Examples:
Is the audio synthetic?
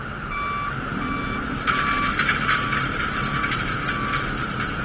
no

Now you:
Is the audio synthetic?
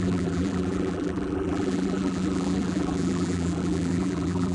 yes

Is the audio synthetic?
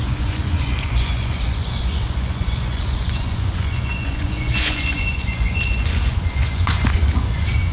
yes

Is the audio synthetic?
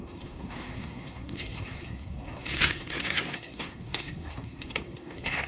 yes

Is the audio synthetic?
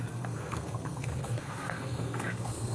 yes